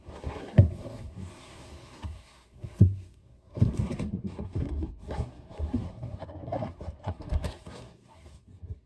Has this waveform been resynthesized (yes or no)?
yes